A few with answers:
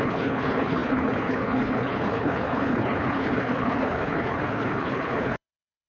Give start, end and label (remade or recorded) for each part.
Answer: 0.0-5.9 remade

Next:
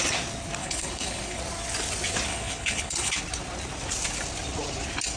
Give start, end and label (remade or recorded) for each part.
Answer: 0.0-0.6 recorded; 0.6-1.4 remade; 1.4-2.3 recorded; 2.3-3.2 remade; 3.2-5.2 recorded

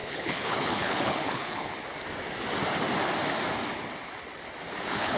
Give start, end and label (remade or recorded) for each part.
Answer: 0.0-1.7 remade; 1.7-4.8 recorded; 4.8-5.2 remade

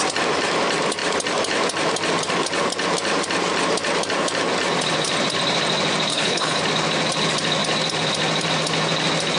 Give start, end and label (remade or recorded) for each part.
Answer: 0.0-6.1 recorded; 6.1-6.6 remade; 6.6-9.4 recorded

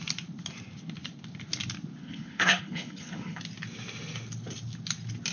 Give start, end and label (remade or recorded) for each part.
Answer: 0.0-2.0 recorded; 2.0-3.4 remade; 3.4-5.3 recorded

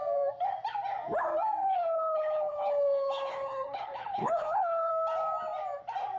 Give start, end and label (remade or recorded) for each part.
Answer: 0.0-1.6 recorded; 1.6-4.9 remade; 4.9-6.2 recorded

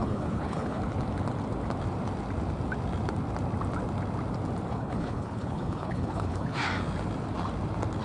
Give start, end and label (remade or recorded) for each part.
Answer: 0.0-0.8 remade; 0.8-4.7 recorded; 4.7-6.7 remade; 6.7-8.0 recorded

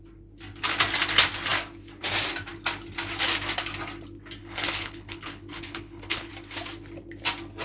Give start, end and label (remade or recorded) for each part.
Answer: 0.0-4.4 recorded; 4.4-6.3 remade; 6.3-7.6 recorded